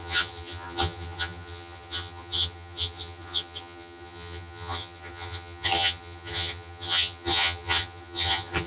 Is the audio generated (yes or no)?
yes